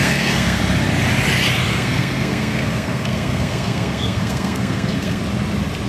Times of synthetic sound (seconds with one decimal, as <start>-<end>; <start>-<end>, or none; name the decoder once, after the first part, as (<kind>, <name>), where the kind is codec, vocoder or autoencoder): 0.0-0.6 (codec, SNAC); 1.7-5.2